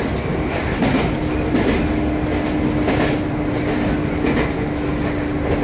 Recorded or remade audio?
recorded